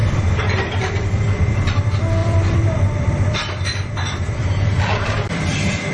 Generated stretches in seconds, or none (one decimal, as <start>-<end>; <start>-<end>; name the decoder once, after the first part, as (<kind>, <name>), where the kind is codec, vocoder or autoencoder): 0.0-1.5 (vocoder, BigVGAN v2); 2.2-5.3